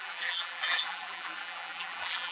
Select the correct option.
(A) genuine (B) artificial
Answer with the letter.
B